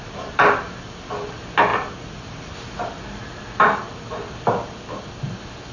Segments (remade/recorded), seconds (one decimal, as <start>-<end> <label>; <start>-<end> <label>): 0.0-5.7 recorded